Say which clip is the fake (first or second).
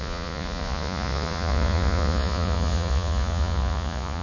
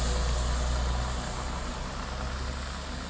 first